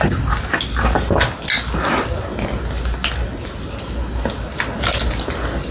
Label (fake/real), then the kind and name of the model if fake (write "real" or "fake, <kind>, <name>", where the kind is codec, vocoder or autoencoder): real